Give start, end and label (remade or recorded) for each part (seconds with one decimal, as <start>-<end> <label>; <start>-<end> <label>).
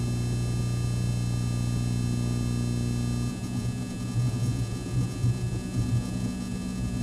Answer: 0.0-3.3 recorded; 3.3-7.0 remade